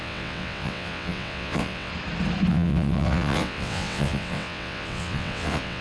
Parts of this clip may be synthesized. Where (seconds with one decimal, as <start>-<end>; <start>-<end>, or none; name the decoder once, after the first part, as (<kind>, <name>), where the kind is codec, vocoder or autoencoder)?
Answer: 0.0-1.9 (vocoder, WaveNeXt); 2.5-5.8